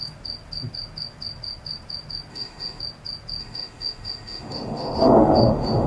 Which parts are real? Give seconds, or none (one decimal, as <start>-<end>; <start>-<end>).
0.0-2.3; 2.8-3.4